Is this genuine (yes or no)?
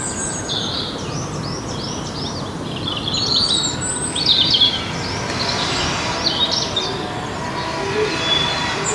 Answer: yes